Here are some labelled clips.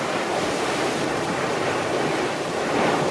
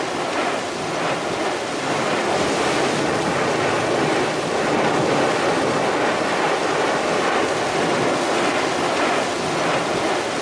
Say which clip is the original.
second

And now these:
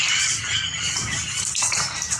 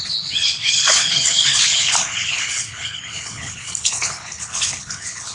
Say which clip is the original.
first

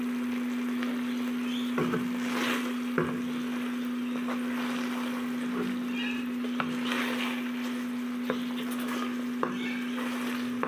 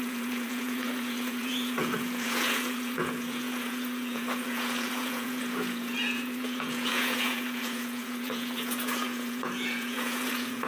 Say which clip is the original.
first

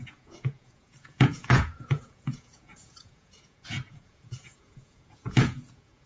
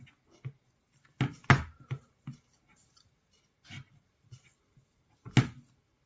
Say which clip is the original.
second